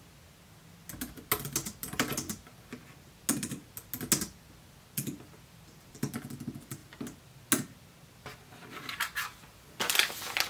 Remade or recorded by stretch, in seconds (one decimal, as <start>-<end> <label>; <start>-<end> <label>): 0.0-10.5 recorded

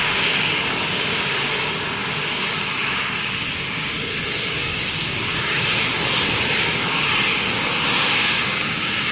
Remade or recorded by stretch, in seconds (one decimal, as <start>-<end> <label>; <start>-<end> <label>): 0.0-9.1 remade